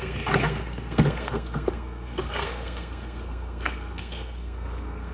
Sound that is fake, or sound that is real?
fake